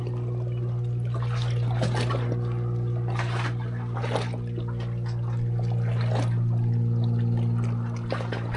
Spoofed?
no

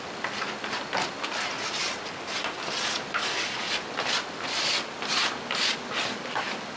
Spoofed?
no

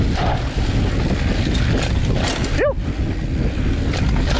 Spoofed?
no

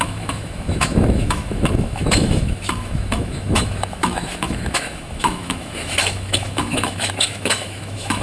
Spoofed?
yes